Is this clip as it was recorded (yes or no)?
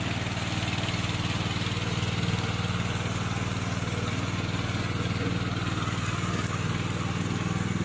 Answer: yes